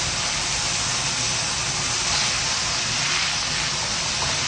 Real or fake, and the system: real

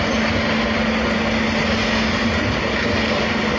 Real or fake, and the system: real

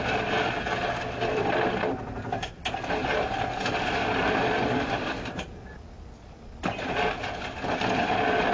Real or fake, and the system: real